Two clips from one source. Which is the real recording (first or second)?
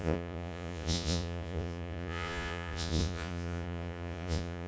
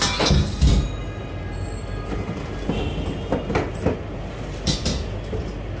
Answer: second